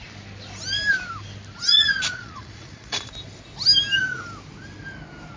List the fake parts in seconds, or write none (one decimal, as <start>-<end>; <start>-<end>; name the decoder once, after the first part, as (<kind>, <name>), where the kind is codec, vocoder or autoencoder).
1.7-3.1 (vocoder, Vocos)

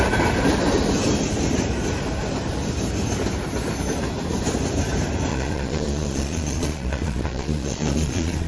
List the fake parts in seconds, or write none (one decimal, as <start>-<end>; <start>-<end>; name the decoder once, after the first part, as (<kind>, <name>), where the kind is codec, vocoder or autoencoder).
5.3-8.5 (vocoder, Vocos)

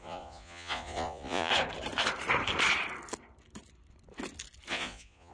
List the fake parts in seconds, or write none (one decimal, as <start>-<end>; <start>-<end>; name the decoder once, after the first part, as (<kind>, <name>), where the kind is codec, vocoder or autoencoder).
0.0-1.5 (vocoder, Vocos); 4.7-5.3

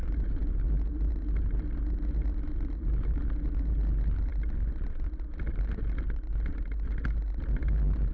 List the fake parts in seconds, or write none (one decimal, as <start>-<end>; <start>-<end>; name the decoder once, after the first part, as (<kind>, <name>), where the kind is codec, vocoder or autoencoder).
none

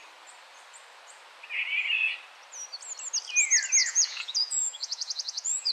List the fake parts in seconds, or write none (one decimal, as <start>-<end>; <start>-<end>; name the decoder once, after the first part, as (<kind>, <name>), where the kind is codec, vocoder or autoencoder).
3.8-5.7 (vocoder, Vocos)

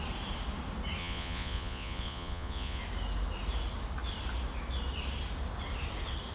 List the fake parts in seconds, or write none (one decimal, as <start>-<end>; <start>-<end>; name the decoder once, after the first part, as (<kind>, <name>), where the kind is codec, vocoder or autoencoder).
1.0-2.8 (vocoder, Vocos)

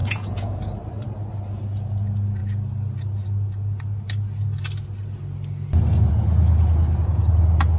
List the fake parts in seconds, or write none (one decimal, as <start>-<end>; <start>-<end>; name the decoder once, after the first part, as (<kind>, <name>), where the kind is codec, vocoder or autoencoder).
0.0-0.6 (vocoder, Vocos)

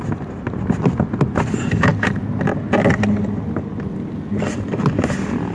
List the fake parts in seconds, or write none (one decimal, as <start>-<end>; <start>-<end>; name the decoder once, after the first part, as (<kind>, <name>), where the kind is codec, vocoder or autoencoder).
none